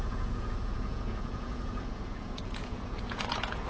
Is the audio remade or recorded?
remade